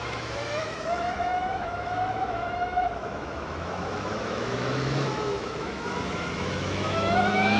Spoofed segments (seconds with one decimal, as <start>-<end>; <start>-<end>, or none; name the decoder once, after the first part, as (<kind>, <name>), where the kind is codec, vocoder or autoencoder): 0.0-7.6 (autoencoder, DAC-VAE)